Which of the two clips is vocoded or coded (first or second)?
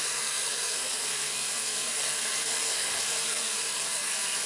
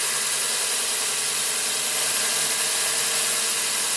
first